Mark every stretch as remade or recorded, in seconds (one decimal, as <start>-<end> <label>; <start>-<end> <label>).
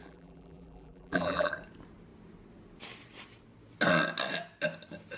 0.0-1.5 remade; 1.5-5.2 recorded